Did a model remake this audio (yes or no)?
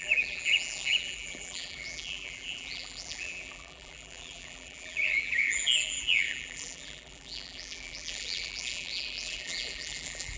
yes